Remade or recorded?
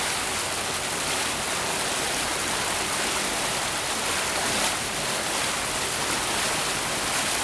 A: recorded